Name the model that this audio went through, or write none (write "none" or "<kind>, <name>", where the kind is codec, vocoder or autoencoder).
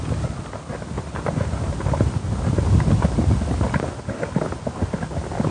none